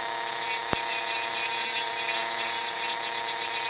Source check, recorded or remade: recorded